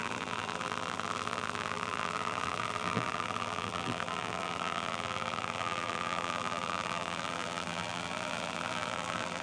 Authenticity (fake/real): fake